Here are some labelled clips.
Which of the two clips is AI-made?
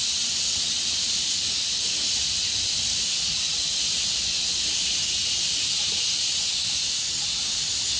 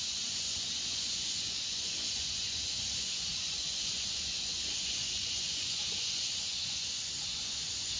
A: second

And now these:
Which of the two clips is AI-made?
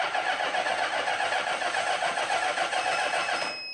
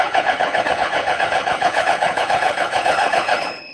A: second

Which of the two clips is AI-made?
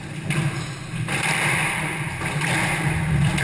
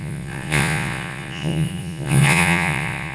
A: second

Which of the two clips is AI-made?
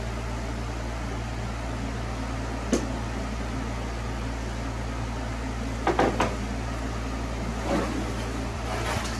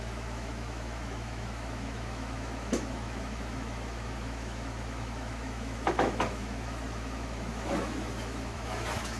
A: second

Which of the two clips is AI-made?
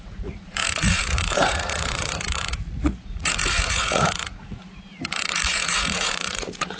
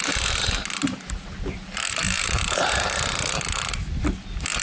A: first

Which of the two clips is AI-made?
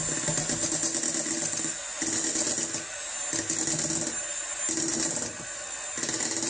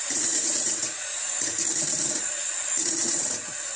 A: second